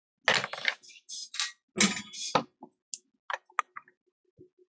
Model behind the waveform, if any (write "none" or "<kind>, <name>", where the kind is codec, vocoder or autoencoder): none